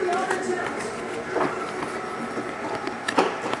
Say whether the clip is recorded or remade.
recorded